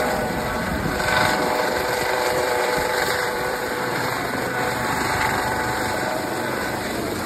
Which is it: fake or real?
fake